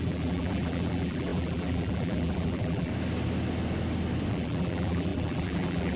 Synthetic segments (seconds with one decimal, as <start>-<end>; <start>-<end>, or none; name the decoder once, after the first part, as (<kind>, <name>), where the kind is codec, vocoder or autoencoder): 0.0-2.9 (vocoder, BigVGAN v2); 4.3-6.0